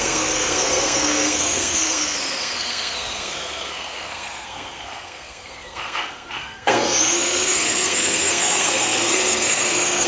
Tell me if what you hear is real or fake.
fake